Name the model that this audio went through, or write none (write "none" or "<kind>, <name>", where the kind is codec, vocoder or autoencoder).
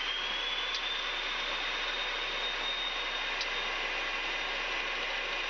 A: none